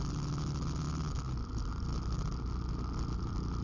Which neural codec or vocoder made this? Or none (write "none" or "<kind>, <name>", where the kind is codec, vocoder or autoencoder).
none